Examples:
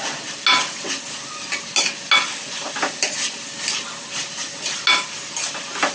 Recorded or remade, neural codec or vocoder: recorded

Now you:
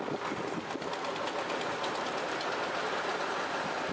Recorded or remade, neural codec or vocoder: recorded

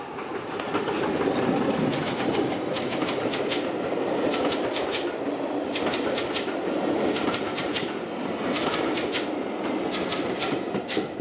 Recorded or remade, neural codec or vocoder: recorded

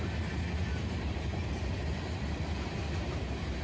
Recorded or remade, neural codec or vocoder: recorded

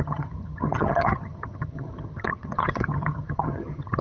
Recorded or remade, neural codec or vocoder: remade, vocoder, HiFi-GAN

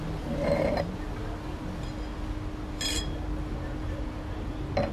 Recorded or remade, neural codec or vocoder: recorded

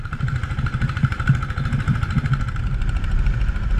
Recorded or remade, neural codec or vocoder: remade, vocoder, BigVGAN v2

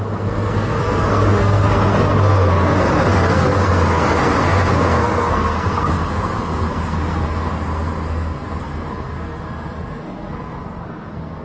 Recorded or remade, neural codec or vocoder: remade, codec, SNAC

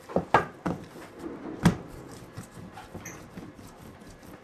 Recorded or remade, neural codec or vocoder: recorded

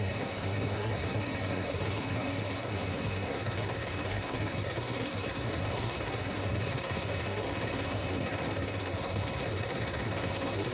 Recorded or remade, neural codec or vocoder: remade, codec, SNAC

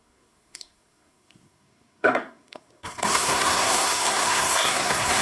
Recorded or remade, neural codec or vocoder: remade, codec, SNAC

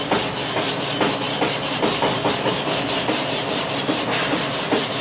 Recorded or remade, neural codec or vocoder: recorded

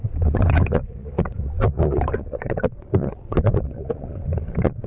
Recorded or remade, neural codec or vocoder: remade, vocoder, Vocos